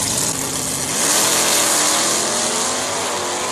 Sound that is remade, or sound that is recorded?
recorded